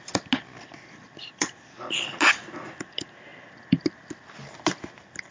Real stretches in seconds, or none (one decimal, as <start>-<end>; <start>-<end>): 0.0-5.3